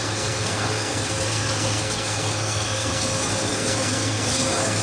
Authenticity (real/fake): fake